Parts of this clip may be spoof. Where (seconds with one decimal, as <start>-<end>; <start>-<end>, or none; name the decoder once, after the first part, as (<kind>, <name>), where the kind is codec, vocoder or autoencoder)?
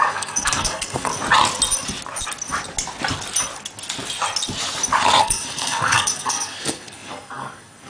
0.0-1.1 (codec, SNAC); 5.2-7.9